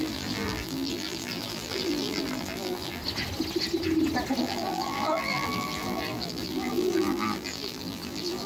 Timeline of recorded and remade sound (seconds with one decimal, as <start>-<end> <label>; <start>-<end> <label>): 0.0-3.0 remade; 3.0-4.4 recorded; 4.4-8.5 remade